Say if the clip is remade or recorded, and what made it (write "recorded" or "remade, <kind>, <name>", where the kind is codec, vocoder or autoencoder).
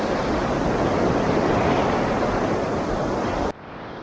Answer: recorded